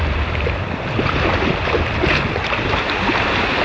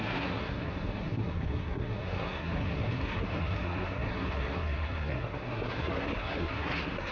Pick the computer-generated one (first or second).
second